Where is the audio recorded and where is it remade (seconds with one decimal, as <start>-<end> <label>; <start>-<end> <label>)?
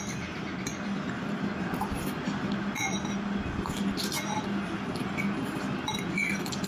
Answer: 0.0-6.7 recorded